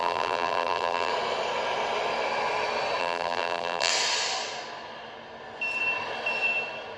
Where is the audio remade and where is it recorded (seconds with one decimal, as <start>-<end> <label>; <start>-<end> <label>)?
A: 0.0-1.1 remade; 1.1-3.0 recorded; 3.0-3.9 remade; 3.9-7.0 recorded